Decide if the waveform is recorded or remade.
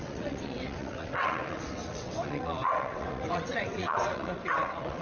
remade